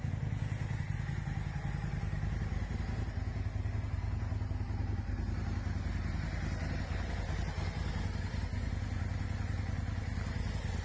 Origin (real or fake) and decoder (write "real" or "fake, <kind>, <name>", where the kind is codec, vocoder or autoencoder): real